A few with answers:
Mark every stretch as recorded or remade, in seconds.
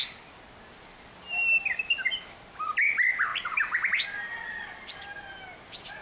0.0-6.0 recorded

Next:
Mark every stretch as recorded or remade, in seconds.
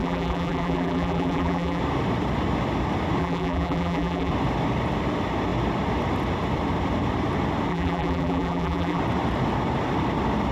0.0-1.8 remade; 1.8-3.2 recorded; 3.2-4.3 remade; 4.3-7.7 recorded; 7.7-9.0 remade; 9.0-10.5 recorded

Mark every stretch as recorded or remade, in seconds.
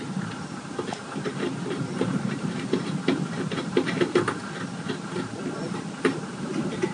0.0-4.4 remade; 4.4-5.8 recorded; 5.8-6.9 remade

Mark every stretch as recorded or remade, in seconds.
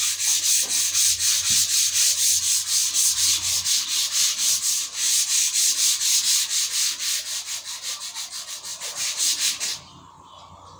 0.0-8.7 recorded; 8.7-10.3 remade; 10.3-10.8 recorded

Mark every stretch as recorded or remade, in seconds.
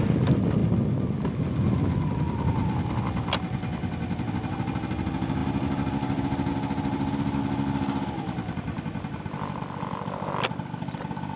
0.0-11.4 recorded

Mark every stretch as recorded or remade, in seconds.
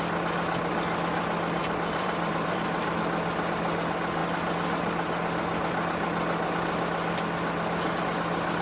0.0-1.6 recorded; 1.6-3.0 remade; 3.0-8.6 recorded